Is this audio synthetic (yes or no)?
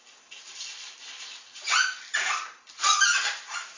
no